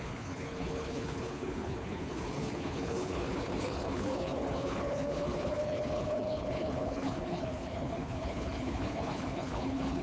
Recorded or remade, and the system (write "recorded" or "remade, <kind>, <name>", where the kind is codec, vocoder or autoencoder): remade, codec, HILCodec